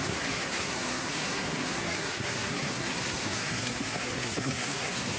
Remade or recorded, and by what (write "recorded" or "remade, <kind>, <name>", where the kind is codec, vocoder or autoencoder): remade, codec, SNAC